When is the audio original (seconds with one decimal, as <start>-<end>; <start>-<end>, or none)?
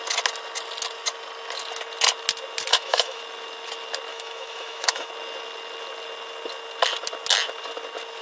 0.0-2.7; 3.2-4.1; 5.1-8.2